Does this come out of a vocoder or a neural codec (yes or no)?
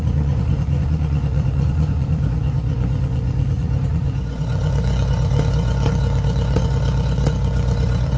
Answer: yes